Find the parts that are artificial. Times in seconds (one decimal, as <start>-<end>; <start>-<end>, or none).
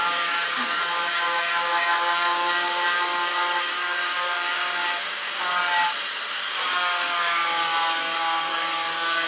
0.0-5.5; 6.5-9.3